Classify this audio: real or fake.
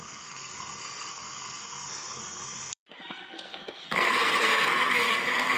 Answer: fake